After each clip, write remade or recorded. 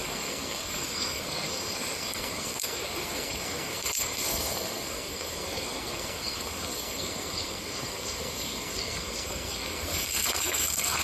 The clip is remade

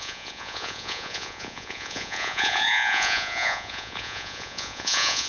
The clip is remade